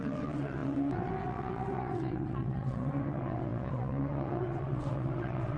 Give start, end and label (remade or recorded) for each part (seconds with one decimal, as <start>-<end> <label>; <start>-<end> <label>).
0.0-5.6 remade

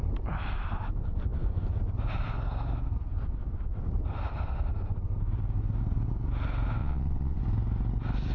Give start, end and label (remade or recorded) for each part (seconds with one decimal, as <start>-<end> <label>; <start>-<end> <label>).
0.0-6.8 recorded; 6.8-7.4 remade; 7.4-8.3 recorded

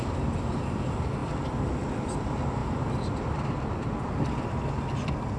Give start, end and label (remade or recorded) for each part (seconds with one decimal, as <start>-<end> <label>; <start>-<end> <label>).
0.0-5.4 recorded

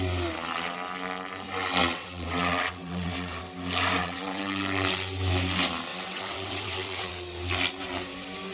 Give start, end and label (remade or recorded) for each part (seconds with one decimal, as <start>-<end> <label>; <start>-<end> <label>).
0.0-1.8 recorded; 1.8-3.4 remade; 3.4-4.0 recorded; 4.0-4.6 remade; 4.6-5.9 recorded; 5.9-7.1 remade; 7.1-8.5 recorded

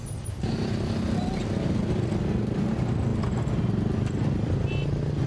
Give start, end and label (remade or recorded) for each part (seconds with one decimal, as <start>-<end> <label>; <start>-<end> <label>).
0.0-5.3 recorded

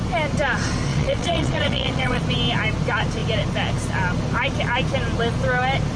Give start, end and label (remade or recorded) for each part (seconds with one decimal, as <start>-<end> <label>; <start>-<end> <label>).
0.0-0.9 recorded; 0.9-2.2 remade; 2.2-6.0 recorded